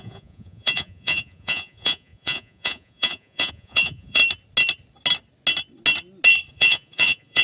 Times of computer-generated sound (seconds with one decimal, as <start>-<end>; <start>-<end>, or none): 0.0-4.2; 6.5-7.4